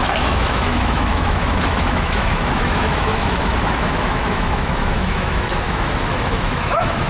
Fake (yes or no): yes